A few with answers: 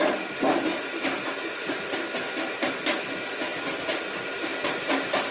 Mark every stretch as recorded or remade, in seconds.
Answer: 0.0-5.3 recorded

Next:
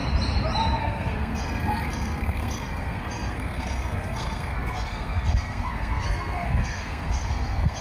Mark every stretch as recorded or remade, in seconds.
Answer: 0.0-0.8 recorded; 0.8-7.8 remade

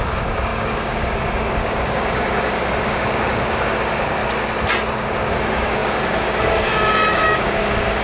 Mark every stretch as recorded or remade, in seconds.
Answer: 0.0-4.2 remade; 4.2-5.3 recorded; 5.3-8.0 remade